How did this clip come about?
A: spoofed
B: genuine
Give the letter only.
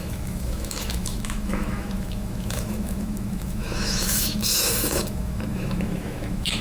A